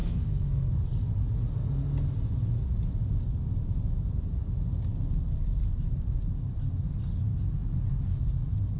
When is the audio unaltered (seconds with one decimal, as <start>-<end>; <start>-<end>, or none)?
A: 0.7-8.8